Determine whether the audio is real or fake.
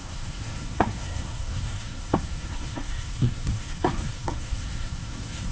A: fake